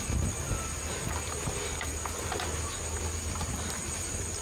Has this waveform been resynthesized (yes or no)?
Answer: no